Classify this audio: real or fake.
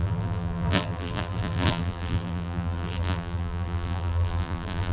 fake